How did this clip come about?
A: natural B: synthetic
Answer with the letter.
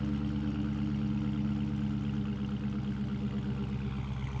A